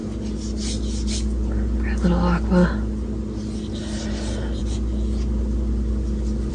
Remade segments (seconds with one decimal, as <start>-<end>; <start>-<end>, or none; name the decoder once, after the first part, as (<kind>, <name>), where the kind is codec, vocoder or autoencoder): none